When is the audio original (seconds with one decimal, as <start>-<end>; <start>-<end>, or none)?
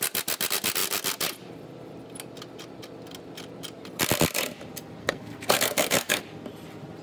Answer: 0.0-5.0; 6.2-7.0